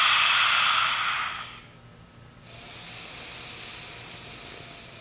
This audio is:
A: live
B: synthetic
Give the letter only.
A